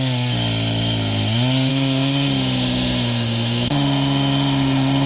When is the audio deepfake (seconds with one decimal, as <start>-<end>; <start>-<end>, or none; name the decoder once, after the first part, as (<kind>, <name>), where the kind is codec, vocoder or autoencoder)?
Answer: 1.7-5.1 (autoencoder, DAC-VAE)